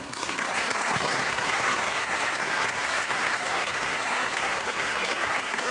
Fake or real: fake